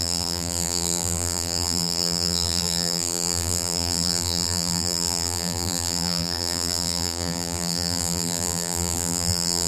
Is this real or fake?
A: fake